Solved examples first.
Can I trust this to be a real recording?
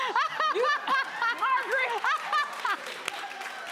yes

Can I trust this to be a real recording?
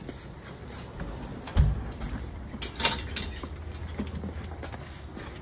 yes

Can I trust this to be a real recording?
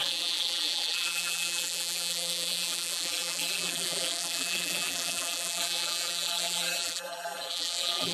no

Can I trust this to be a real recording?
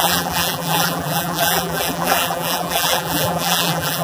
no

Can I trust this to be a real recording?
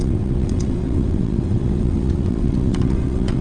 no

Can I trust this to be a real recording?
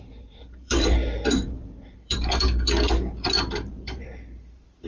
no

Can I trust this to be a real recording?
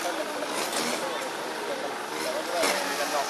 yes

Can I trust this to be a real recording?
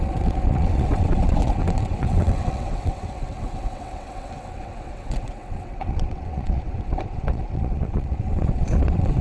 no